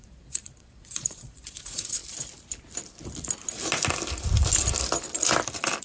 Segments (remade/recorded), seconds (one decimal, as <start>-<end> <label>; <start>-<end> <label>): 0.0-2.0 remade; 2.0-5.8 recorded